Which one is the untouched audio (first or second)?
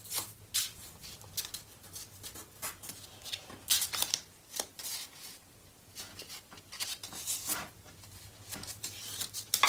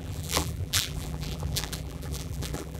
first